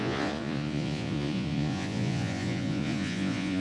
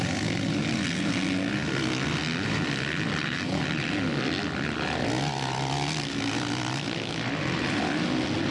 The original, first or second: second